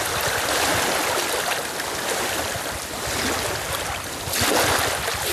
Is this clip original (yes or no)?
yes